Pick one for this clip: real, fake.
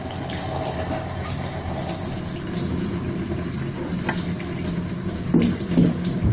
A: real